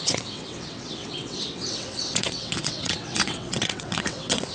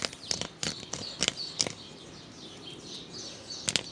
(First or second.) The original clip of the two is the second